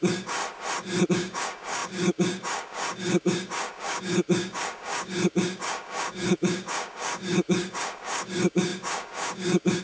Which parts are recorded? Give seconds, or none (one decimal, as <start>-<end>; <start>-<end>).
0.4-1.1